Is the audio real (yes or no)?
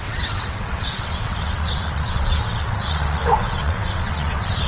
no